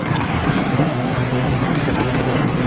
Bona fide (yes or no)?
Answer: no